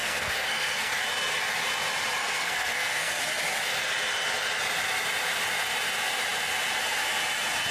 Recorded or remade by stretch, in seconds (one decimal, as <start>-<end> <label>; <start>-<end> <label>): 0.0-0.9 remade; 0.9-2.2 recorded; 2.2-3.2 remade; 3.2-7.7 recorded